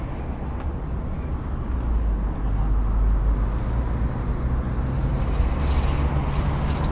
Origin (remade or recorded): recorded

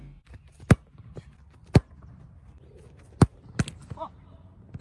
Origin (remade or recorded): recorded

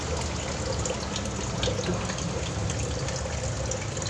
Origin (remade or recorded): recorded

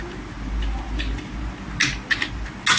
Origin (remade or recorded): recorded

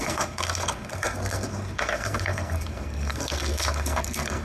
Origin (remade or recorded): remade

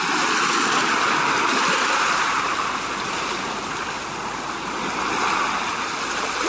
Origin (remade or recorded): recorded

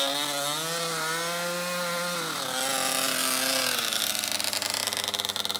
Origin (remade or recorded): recorded